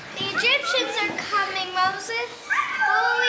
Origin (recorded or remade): recorded